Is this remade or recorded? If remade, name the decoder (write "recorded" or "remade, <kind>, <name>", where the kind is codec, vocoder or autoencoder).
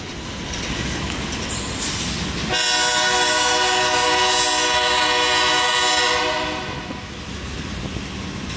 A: recorded